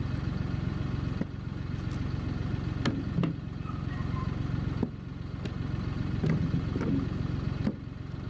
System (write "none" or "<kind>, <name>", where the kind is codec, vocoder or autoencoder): none